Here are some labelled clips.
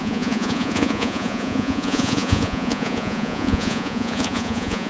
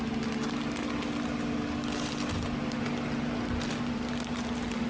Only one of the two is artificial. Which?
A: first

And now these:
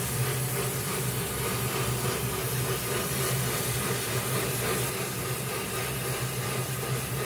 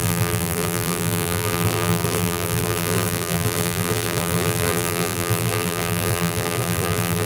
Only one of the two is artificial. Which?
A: second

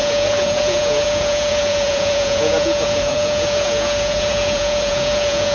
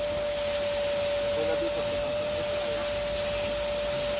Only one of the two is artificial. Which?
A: first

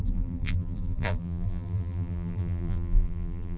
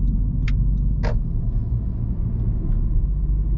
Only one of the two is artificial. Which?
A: first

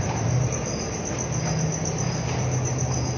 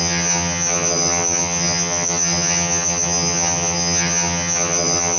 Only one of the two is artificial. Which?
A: second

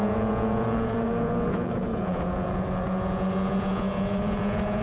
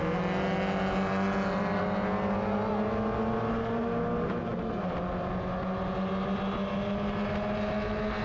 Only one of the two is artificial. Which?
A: first